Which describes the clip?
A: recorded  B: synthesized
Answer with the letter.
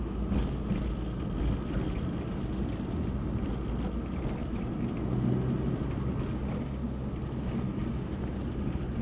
A